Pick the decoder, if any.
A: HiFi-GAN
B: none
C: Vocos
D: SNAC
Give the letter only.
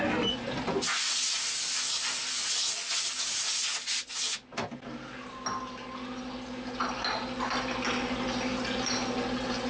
B